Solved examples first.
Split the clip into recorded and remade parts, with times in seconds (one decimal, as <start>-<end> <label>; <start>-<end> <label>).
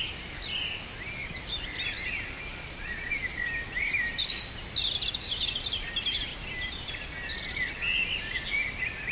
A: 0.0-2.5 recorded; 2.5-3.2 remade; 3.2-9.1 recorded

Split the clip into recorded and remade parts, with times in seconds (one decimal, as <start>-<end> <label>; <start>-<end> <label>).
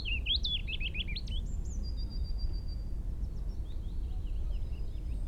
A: 0.0-5.3 recorded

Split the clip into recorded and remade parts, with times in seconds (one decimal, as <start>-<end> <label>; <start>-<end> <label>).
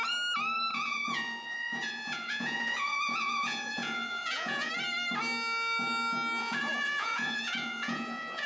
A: 0.0-0.7 recorded; 0.7-4.7 remade; 4.7-6.4 recorded; 6.4-8.5 remade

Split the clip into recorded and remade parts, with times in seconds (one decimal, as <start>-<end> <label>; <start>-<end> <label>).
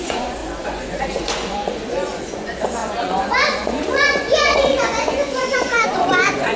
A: 0.0-6.6 remade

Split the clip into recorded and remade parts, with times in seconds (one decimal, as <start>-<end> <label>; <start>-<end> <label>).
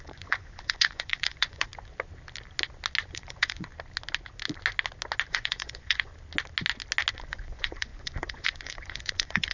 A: 0.0-1.7 remade; 1.7-3.1 recorded; 3.1-3.7 remade; 3.7-5.3 recorded; 5.3-6.1 remade; 6.1-7.1 recorded; 7.1-9.5 remade